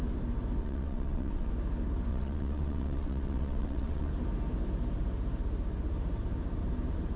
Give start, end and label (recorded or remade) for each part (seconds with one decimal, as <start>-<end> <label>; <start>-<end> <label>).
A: 0.0-0.6 recorded; 0.6-1.5 remade; 1.5-2.1 recorded; 2.1-4.1 remade; 4.1-7.2 recorded